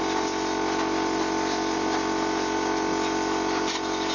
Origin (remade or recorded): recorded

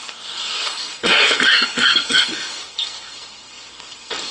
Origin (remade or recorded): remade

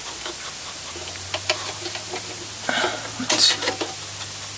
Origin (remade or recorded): recorded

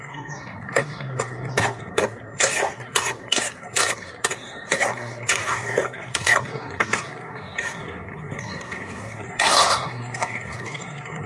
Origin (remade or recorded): remade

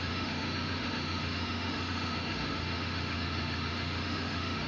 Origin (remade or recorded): remade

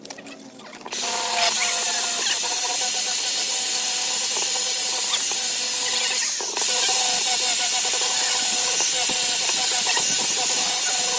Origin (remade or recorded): recorded